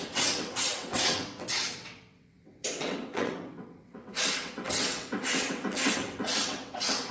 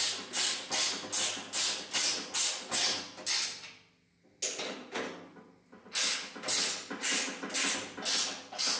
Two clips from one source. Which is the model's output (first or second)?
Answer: first